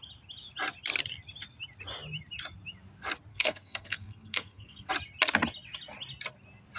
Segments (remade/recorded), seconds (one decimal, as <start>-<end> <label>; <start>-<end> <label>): 0.0-3.3 recorded; 3.3-4.9 remade; 4.9-6.8 recorded